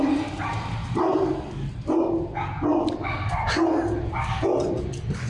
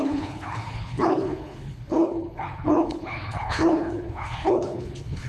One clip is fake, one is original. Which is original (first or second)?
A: first